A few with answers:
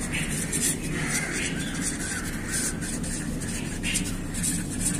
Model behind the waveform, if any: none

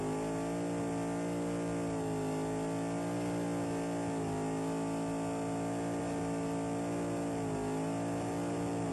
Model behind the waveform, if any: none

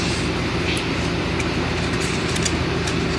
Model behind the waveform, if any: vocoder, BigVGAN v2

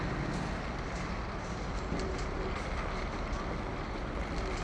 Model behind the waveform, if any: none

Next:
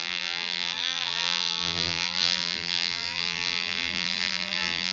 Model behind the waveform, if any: vocoder, BigVGAN v2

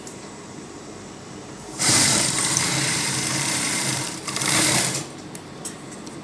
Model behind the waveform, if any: vocoder, BigVGAN v2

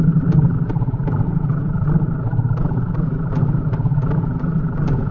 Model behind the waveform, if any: vocoder, BigVGAN v2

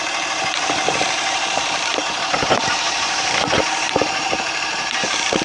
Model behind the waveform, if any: vocoder, BigVGAN v2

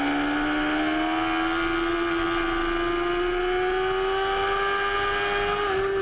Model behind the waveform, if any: none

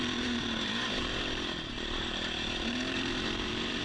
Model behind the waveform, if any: vocoder, BigVGAN v2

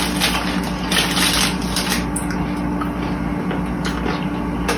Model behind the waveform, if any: none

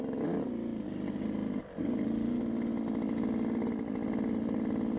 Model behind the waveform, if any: none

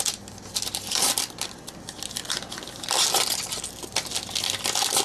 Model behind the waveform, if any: none